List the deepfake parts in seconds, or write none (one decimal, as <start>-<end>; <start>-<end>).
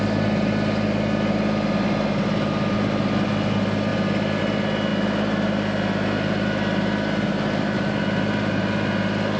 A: none